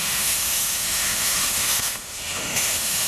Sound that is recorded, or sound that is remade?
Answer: remade